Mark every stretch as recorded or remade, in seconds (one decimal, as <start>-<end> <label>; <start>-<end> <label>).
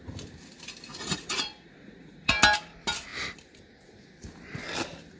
0.0-0.9 recorded; 0.9-2.3 remade; 2.3-5.2 recorded